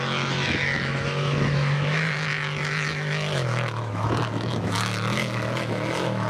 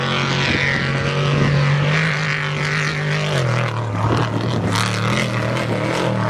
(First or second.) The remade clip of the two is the first